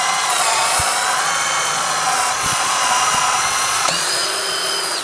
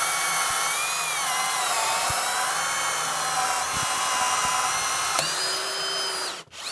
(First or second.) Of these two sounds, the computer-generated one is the first